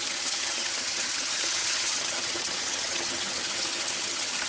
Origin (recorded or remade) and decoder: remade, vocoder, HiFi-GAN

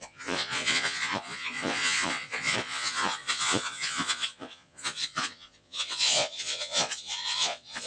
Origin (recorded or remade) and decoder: remade, vocoder, Vocos